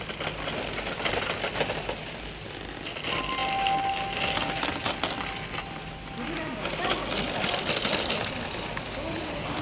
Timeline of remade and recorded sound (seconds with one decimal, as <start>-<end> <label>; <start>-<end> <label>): 0.0-9.6 recorded